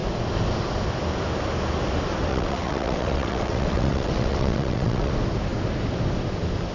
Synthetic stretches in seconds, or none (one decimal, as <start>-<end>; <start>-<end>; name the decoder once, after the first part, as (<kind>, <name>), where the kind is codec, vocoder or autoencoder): 2.3-5.1 (vocoder, WaveNeXt)